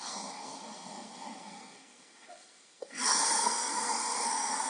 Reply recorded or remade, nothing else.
remade